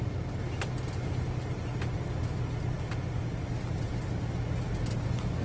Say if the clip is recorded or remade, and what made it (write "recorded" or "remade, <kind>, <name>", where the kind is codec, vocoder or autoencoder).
recorded